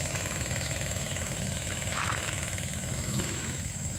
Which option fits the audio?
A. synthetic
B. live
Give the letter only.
A